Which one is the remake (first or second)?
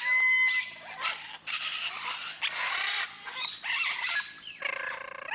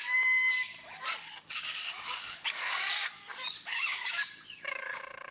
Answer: second